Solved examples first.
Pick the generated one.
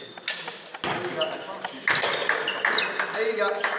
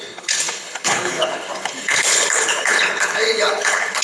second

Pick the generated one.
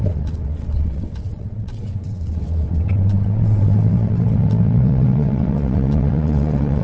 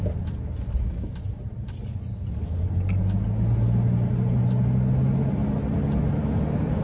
first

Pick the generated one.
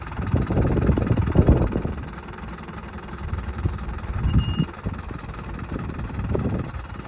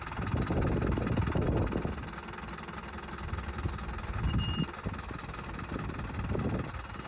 first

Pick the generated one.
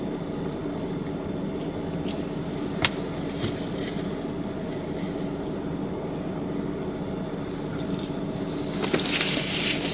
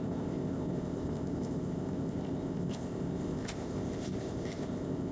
second